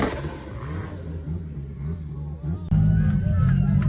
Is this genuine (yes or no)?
yes